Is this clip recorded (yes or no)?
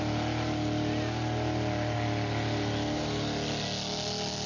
yes